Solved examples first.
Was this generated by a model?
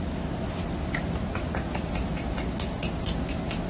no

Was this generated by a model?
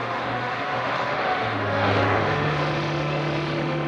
yes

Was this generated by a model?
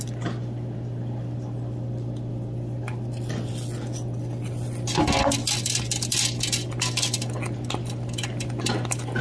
no